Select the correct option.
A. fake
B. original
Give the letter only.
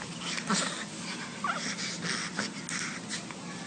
B